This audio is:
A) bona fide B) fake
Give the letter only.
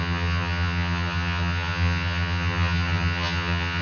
B